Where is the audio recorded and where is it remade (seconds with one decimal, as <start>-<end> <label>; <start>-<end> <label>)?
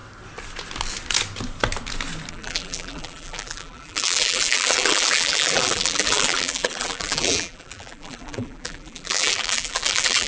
0.0-2.3 recorded; 2.3-10.3 remade